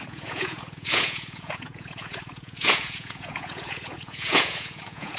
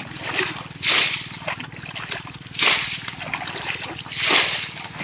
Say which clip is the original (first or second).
second